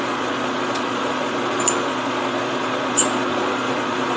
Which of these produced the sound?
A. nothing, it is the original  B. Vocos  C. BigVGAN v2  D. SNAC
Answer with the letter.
B